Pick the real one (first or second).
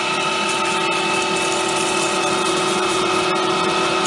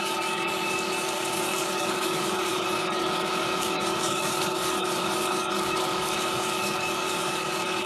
first